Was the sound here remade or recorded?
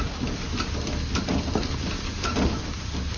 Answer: recorded